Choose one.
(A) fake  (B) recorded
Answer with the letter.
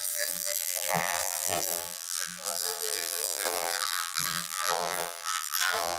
A